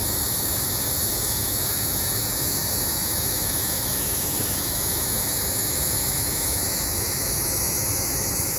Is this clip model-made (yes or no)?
yes